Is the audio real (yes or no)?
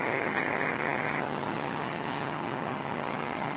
no